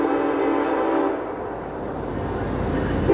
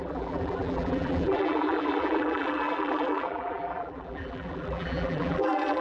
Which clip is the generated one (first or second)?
second